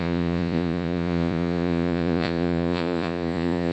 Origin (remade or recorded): remade